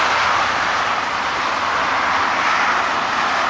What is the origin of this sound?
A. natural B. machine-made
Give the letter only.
A